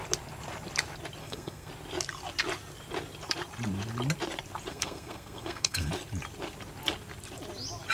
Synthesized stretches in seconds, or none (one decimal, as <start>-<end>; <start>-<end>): 1.2-1.7; 4.7-5.9